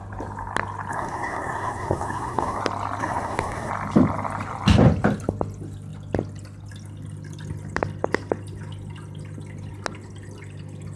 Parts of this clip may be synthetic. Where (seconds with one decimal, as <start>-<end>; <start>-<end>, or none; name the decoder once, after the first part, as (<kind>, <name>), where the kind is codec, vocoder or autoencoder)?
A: 0.9-2.6 (codec, SNAC); 3.0-3.7